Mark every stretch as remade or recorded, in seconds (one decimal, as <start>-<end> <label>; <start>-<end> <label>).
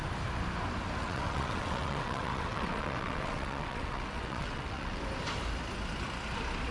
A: 0.0-1.0 recorded; 1.0-5.0 remade; 5.0-6.7 recorded